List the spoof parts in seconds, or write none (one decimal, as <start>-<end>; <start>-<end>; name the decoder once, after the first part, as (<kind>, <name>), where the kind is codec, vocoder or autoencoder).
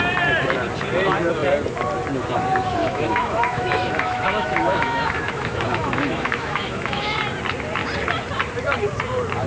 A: 2.8-7.2 (autoencoder, DAC-VAE)